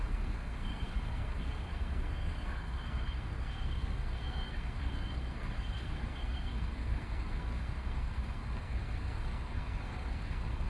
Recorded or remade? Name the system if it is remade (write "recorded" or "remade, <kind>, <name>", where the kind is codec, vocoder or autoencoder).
remade, codec, SNAC